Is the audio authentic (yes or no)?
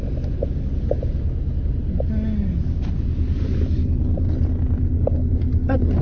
yes